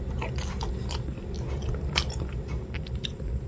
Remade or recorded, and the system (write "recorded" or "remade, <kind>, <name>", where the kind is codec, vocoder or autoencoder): recorded